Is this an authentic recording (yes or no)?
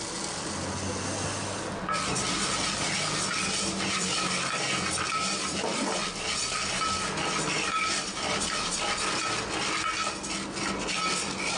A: yes